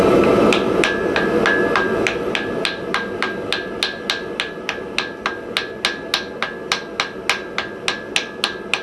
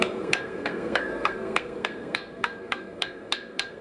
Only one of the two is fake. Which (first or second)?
second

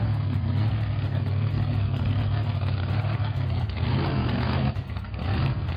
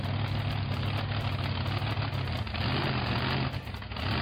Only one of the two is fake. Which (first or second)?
first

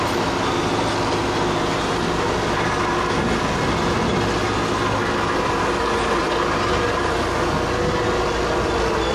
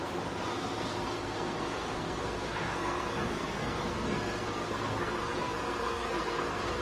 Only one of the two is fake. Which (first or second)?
second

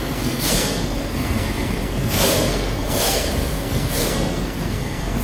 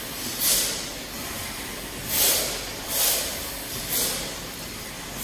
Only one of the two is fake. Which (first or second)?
first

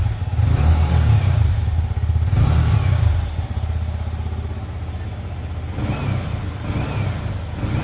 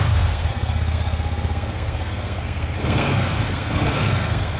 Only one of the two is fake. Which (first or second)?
second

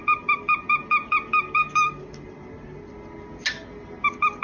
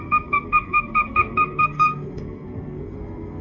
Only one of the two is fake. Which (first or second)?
second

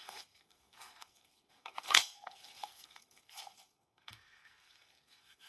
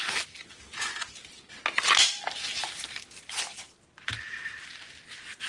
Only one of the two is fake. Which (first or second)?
first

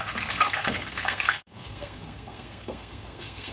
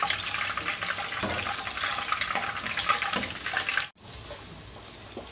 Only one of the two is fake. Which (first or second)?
first